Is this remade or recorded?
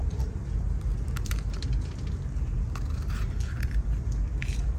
remade